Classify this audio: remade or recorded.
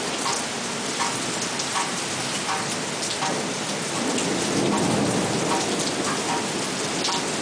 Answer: recorded